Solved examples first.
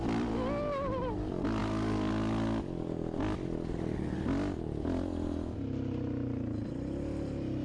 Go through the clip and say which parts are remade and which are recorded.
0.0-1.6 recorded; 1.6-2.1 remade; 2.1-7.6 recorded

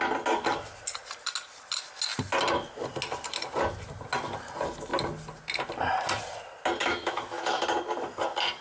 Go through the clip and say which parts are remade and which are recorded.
0.0-6.8 recorded; 6.8-7.6 remade; 7.6-8.6 recorded

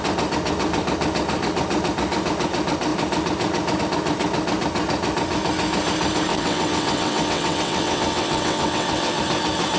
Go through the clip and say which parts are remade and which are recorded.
0.0-6.3 recorded; 6.3-9.2 remade; 9.2-9.8 recorded